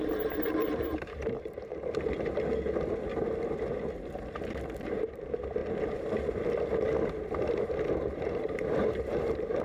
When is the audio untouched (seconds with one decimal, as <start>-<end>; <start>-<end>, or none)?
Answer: 1.7-4.9; 5.6-7.9